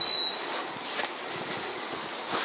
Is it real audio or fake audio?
real